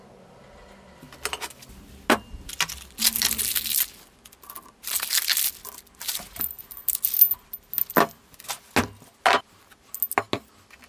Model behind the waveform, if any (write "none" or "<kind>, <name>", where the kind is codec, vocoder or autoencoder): none